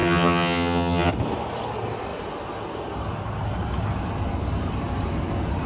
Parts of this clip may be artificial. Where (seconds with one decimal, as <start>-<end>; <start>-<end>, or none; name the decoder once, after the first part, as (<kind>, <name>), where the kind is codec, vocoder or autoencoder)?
0.0-1.1 (vocoder, HiFi-GAN)